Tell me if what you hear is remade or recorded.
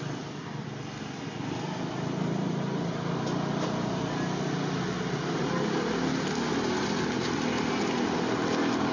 recorded